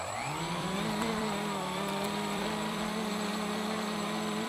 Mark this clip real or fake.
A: fake